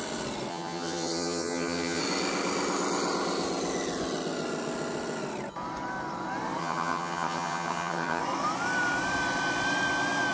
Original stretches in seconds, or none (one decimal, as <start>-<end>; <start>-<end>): 0.0-0.5; 2.0-6.6; 8.2-10.3